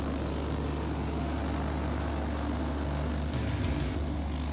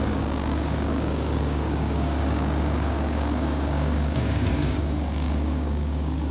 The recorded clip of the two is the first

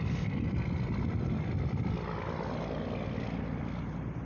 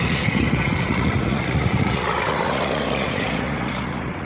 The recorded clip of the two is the first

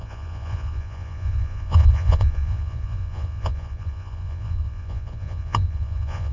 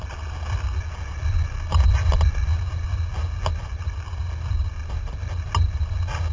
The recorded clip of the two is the second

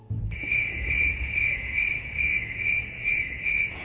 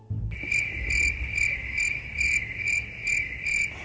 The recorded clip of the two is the second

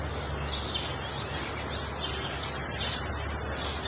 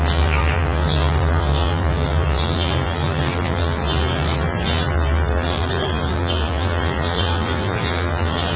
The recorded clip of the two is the first